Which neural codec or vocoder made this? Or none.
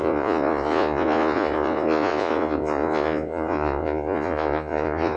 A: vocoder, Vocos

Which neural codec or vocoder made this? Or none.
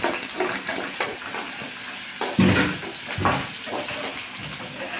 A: none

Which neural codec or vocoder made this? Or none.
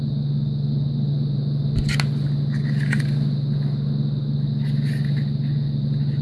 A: none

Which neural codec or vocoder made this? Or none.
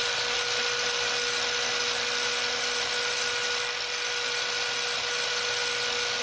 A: none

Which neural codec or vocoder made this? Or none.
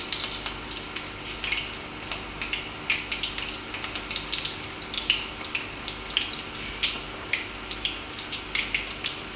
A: none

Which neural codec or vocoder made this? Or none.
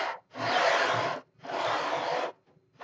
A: none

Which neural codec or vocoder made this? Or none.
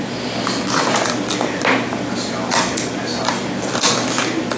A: none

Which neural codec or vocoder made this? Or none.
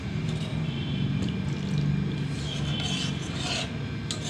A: none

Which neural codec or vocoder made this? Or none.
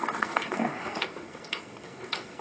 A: codec, SNAC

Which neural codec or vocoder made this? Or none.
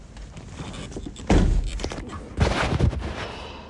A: none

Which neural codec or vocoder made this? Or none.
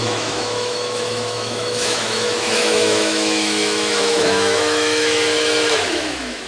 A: autoencoder, DAC-VAE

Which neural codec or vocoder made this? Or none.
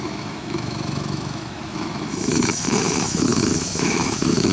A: autoencoder, DAC-VAE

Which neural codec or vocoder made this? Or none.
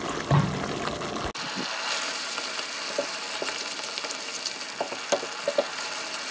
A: none